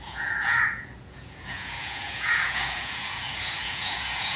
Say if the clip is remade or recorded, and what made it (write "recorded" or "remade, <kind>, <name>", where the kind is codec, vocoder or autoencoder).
remade, vocoder, Vocos